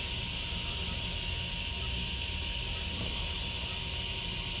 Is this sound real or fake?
real